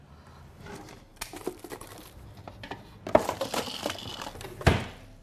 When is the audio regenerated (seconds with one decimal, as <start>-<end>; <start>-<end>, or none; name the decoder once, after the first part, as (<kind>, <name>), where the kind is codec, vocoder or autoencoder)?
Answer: 0.0-1.1 (vocoder, BigVGAN v2); 2.8-5.2